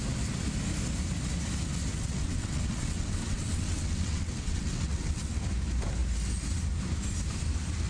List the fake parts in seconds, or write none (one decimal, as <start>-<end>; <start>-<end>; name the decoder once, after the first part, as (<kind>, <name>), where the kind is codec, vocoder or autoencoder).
1.9-5.4 (vocoder, WaveNeXt)